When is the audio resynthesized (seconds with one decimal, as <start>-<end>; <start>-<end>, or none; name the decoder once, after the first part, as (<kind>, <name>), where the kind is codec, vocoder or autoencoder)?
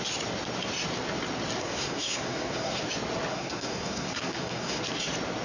1.6-2.8 (codec, SNAC); 3.3-4.8